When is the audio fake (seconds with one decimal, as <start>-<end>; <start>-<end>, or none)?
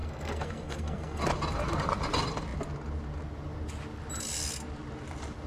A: 0.0-1.2